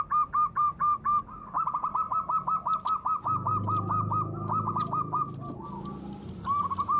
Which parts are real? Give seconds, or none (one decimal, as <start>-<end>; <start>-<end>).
0.0-7.0